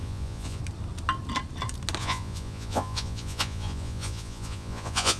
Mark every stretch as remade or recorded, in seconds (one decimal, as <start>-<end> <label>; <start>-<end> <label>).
0.0-0.6 remade; 0.6-2.0 recorded; 2.0-5.2 remade